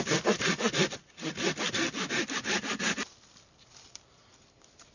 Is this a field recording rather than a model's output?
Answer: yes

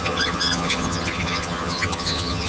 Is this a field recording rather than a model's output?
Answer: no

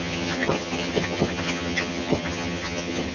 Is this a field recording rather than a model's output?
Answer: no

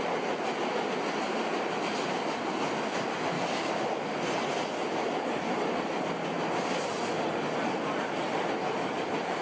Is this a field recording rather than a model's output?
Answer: yes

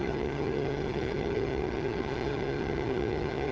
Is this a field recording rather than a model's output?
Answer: no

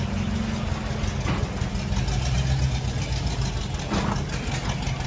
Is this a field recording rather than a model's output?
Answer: yes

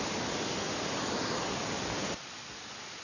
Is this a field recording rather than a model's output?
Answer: yes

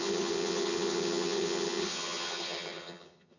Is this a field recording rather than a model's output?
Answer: no